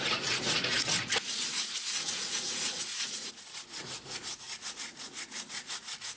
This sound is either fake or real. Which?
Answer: fake